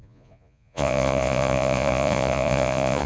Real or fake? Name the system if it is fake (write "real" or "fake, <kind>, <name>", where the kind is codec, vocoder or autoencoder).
fake, vocoder, Vocos